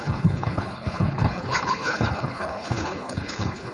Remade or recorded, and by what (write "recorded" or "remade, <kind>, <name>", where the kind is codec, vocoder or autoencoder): remade, codec, HILCodec